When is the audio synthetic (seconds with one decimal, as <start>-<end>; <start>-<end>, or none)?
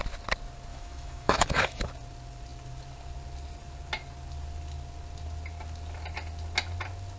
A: 0.7-1.9